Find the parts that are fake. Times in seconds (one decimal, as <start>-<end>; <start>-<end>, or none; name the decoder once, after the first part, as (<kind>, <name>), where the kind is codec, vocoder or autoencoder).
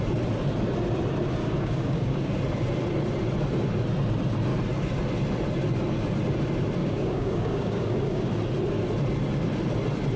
1.4-2.3 (codec, DAC); 6.8-8.3